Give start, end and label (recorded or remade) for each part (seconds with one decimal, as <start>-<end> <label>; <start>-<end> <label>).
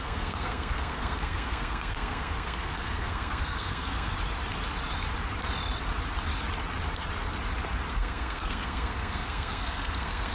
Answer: 0.0-4.1 remade; 4.1-7.9 recorded; 7.9-10.3 remade